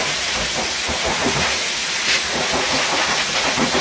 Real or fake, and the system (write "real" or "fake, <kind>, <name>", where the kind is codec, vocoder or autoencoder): fake, vocoder, Vocos